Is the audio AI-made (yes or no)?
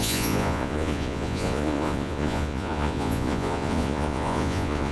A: yes